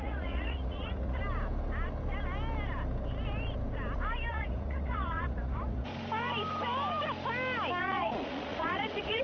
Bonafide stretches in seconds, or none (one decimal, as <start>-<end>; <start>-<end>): 1.2-4.3; 5.9-7.8